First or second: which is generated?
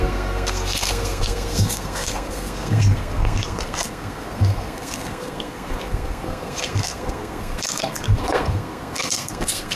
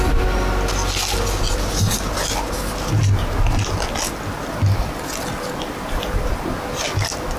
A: first